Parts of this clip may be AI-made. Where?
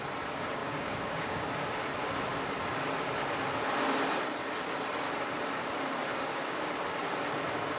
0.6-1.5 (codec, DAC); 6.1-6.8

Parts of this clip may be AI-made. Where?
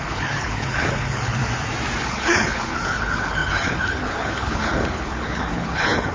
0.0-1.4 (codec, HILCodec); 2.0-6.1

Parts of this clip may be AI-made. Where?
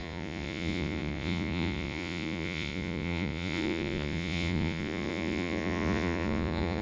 0.0-6.8 (vocoder, Vocos)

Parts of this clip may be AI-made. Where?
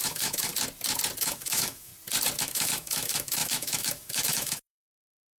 0.0-0.5 (autoencoder, DAC-VAE); 1.2-1.9; 2.4-5.4